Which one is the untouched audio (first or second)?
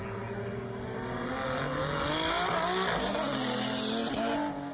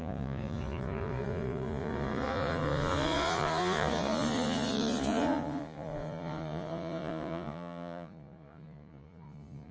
first